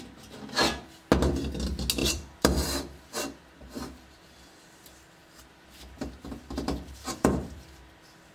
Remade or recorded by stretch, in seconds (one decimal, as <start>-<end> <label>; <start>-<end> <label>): 0.0-2.0 recorded; 2.0-4.6 remade; 4.6-5.2 recorded; 5.2-8.3 remade